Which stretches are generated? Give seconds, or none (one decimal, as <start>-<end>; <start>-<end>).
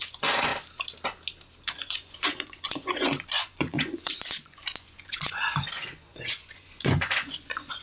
0.0-0.5; 1.6-7.8